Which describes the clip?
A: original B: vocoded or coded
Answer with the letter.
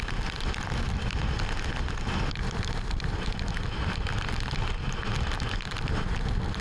A